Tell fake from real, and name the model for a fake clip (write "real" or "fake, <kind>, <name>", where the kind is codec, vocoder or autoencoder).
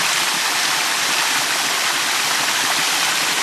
real